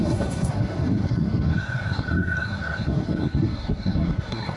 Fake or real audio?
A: fake